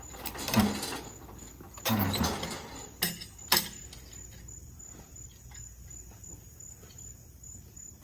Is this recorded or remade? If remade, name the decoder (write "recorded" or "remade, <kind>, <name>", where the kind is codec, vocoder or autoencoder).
recorded